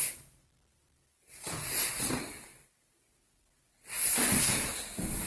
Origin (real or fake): real